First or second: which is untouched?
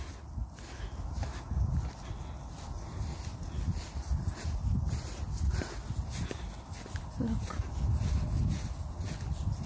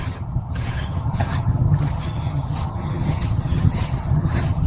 first